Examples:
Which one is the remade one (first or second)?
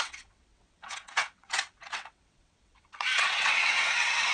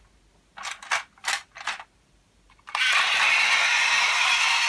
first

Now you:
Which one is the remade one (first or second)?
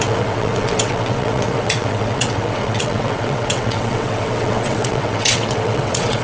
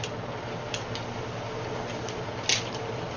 first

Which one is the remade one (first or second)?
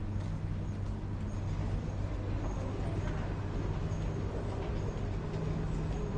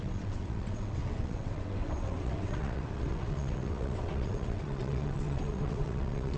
second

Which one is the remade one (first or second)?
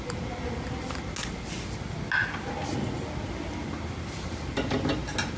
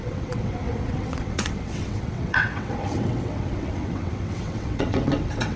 second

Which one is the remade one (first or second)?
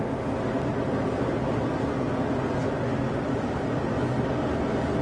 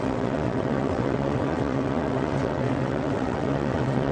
second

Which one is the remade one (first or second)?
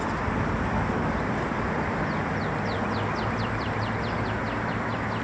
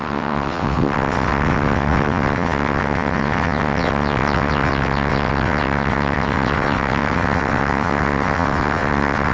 second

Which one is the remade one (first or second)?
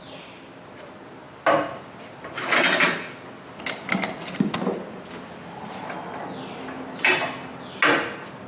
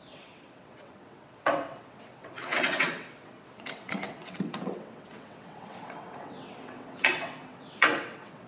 second